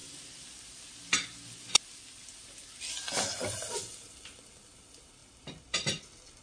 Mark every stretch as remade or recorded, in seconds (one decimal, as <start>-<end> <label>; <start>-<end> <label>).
0.0-6.4 recorded